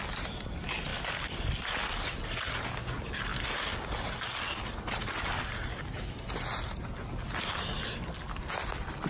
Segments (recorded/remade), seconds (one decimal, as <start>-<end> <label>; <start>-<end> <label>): 0.0-9.1 recorded